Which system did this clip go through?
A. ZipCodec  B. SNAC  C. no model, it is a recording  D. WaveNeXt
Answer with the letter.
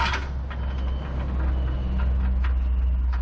C